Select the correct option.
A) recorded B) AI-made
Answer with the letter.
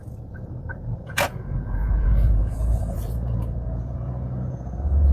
B